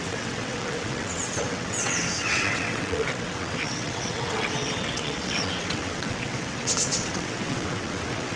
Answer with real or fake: fake